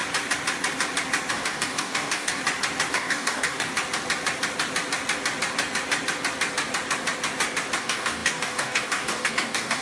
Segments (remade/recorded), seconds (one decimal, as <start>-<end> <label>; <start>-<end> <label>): 0.0-1.3 recorded; 1.3-2.4 remade; 2.4-2.9 recorded; 2.9-3.7 remade; 3.7-7.8 recorded; 7.8-9.8 remade